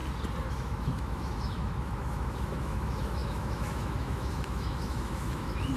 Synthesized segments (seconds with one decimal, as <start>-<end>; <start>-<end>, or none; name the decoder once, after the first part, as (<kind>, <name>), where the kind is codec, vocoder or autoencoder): 0.5-5.8 (autoencoder, DAC-VAE)